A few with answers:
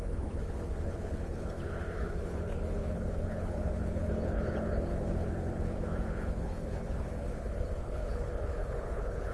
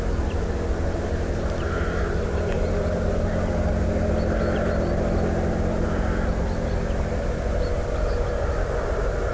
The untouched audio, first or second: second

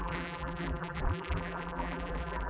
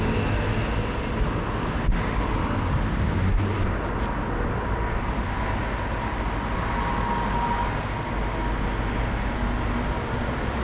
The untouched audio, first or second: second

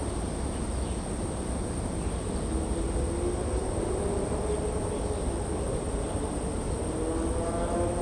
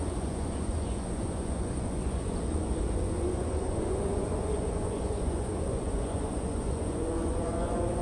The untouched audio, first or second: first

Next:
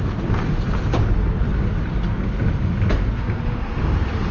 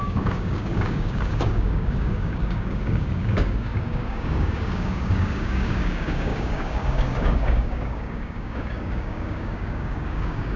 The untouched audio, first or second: first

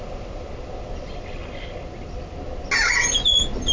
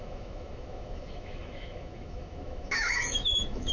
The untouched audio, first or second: first